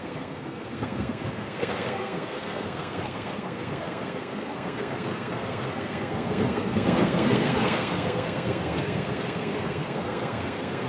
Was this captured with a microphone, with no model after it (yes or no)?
no